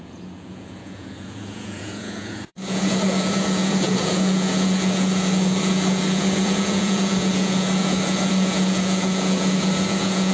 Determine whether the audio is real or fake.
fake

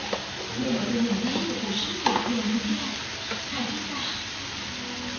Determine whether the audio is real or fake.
real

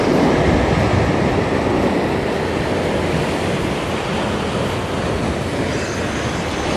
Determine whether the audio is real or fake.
real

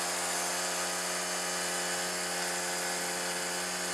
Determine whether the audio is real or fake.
real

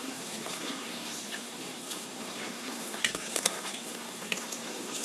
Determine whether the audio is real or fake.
fake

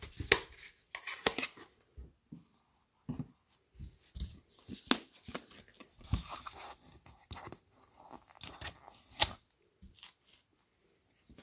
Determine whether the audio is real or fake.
real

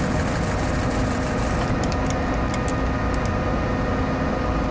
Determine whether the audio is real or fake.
real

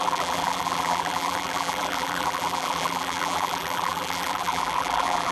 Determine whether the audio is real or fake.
fake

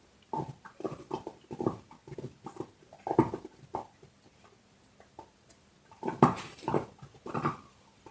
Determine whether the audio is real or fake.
real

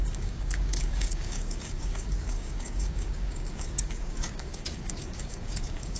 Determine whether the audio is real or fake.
fake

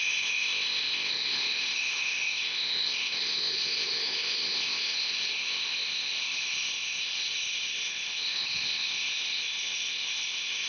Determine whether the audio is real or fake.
fake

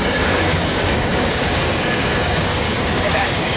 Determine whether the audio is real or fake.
fake